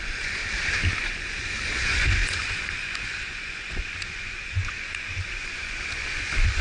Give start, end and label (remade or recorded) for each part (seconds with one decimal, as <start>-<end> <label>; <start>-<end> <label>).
0.0-0.4 remade; 0.4-1.0 recorded; 1.0-6.6 remade